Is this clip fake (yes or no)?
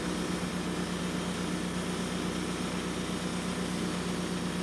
no